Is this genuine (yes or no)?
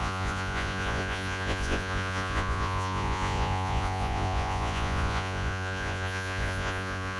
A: no